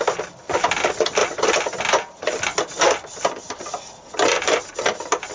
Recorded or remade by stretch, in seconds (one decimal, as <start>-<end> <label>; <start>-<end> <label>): 0.0-5.3 recorded